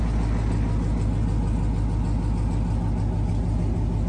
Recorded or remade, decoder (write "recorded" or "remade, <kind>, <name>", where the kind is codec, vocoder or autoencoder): recorded